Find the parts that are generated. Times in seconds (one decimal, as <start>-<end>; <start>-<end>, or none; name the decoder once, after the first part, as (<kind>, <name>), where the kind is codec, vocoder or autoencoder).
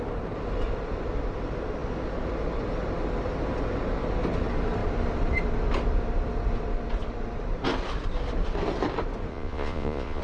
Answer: 9.3-10.2 (vocoder, Vocos)